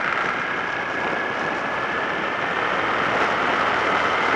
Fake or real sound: real